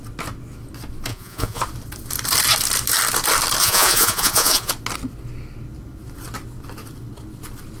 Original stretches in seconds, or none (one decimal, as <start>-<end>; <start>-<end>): 0.0-1.1; 1.6-3.6; 4.7-7.8